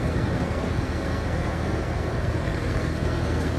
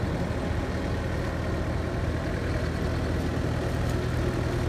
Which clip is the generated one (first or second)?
first